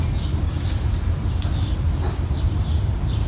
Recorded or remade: recorded